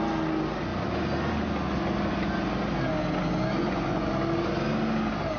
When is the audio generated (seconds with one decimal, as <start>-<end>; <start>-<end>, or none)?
3.6-4.1